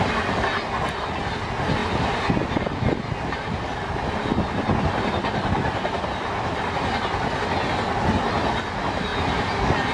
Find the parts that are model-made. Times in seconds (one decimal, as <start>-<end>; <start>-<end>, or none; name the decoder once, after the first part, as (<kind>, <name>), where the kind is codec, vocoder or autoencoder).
none